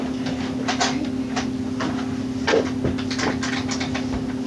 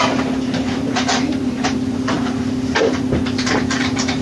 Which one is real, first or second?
first